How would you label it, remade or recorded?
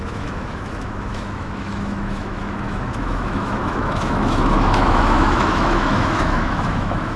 remade